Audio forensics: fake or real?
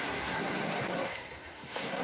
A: fake